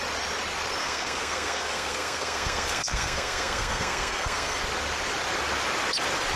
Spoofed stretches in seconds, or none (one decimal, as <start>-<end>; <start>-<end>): 0.8-4.6